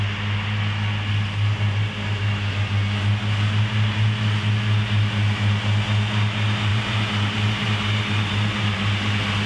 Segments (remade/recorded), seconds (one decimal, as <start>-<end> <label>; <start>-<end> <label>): 0.0-6.7 recorded; 6.7-9.5 remade